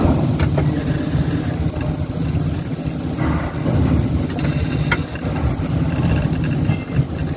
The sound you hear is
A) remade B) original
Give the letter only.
B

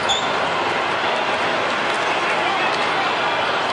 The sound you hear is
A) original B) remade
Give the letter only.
A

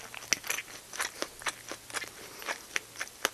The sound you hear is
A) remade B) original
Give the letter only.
B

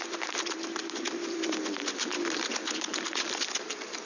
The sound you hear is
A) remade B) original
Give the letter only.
A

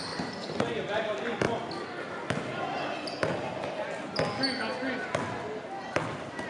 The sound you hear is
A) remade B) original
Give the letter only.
B